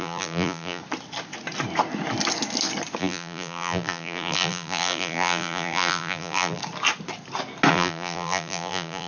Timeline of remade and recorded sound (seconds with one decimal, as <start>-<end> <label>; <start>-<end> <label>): 0.0-0.8 remade; 0.8-3.0 recorded; 3.0-6.6 remade; 6.6-7.7 recorded; 7.7-9.1 remade